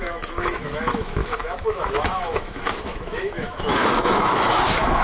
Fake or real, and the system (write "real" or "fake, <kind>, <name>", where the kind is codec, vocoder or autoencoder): fake, autoencoder, DAC-VAE